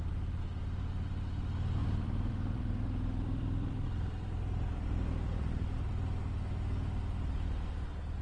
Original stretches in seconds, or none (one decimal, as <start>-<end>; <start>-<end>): 0.0-1.8; 5.9-8.2